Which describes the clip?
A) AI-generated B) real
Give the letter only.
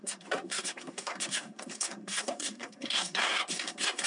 A